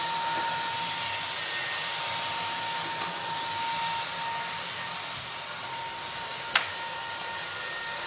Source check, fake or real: real